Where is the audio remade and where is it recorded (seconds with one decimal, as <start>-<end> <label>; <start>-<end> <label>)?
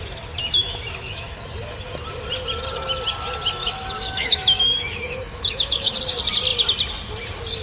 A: 0.0-0.4 recorded; 0.4-1.5 remade; 1.5-3.6 recorded; 3.6-6.0 remade; 6.0-7.6 recorded